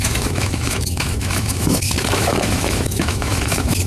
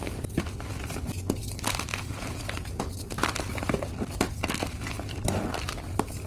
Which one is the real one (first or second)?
second